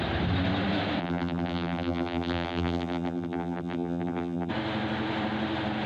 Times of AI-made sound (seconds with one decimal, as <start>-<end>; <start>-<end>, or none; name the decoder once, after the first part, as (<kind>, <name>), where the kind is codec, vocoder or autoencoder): 1.0-4.5 (vocoder, BigVGAN v2)